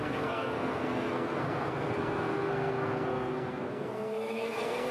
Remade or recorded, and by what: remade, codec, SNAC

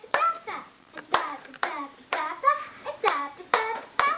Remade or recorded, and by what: remade, vocoder, BigVGAN v2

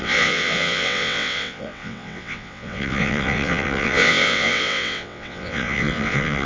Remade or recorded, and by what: remade, vocoder, WaveNeXt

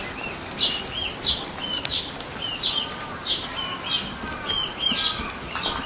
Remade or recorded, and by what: recorded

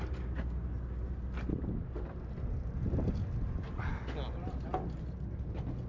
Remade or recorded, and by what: recorded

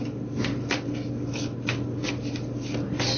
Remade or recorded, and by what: recorded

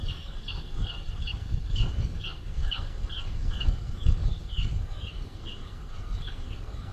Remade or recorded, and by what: remade, codec, SNAC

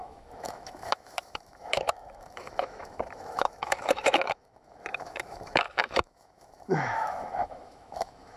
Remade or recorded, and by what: remade, autoencoder, DAC-VAE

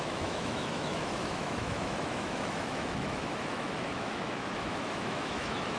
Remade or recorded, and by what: remade, autoencoder, DAC-VAE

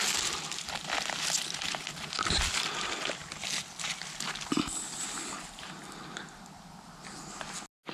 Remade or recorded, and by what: recorded